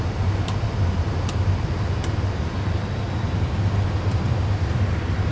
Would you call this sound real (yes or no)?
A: yes